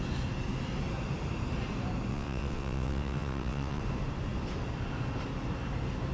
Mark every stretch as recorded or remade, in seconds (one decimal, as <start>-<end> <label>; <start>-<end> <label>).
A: 0.0-2.1 recorded; 2.1-3.8 remade; 3.8-6.1 recorded